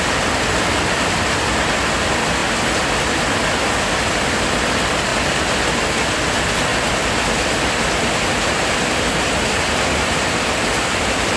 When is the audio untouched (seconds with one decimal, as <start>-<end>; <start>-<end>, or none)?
2.4-4.0; 5.1-6.3; 6.7-7.7